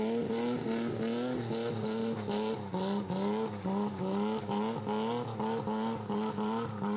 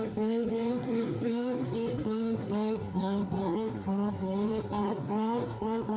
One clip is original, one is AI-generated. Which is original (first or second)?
first